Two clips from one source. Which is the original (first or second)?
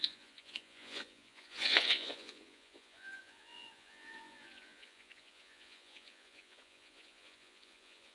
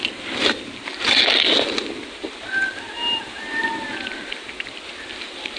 second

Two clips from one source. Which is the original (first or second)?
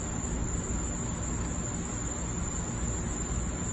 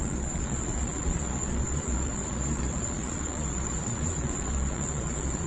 first